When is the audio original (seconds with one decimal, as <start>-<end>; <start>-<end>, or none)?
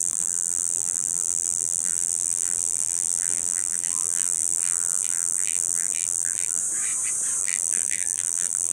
6.6-7.4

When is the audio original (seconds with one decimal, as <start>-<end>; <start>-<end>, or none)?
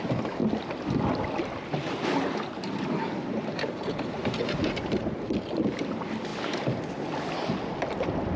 0.0-3.7; 5.0-8.4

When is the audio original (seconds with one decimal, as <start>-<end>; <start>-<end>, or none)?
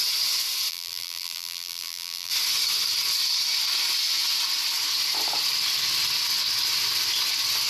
0.0-0.7; 2.3-7.7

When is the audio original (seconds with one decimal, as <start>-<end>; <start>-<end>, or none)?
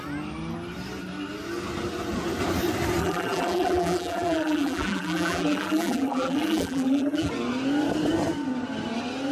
0.0-3.0; 7.3-9.3